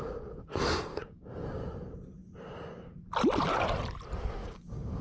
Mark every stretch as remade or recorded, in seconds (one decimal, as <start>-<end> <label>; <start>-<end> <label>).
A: 0.0-0.9 recorded; 0.9-1.6 remade; 1.6-4.4 recorded; 4.4-5.0 remade